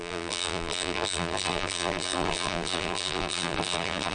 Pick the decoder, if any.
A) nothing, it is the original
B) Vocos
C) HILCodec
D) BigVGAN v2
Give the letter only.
D